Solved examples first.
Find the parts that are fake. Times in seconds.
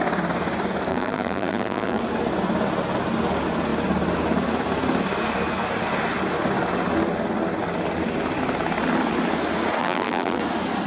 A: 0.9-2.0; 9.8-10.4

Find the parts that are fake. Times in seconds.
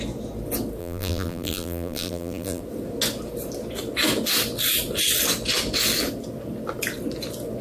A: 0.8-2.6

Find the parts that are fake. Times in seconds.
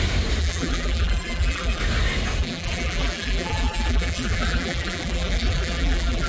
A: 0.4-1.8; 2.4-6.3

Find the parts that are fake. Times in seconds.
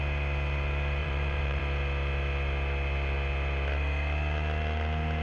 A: 1.0-1.6